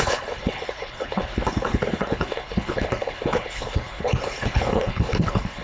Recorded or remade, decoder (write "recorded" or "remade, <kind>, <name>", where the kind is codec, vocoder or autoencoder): remade, codec, HILCodec